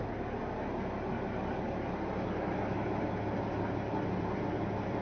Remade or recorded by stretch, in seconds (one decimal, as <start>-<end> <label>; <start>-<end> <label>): 0.0-5.0 recorded